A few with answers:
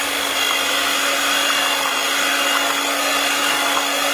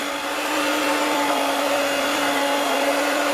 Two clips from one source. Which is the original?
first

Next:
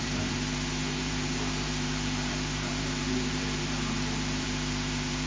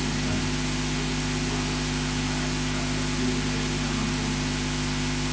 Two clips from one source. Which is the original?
second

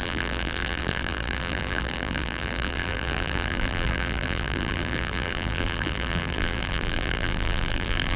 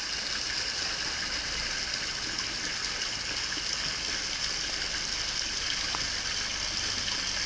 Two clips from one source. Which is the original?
second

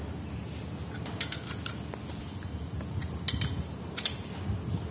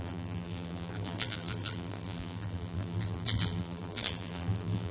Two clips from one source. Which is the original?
first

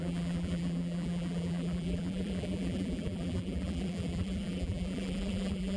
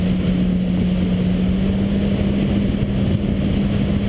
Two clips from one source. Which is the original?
second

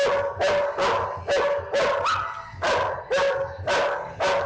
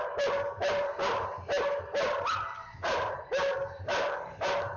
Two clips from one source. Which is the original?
first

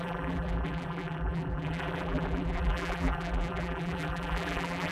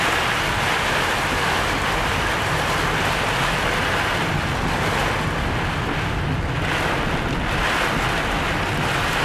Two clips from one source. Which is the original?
second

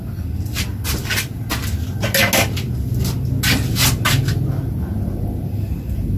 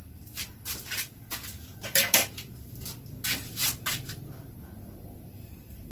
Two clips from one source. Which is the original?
first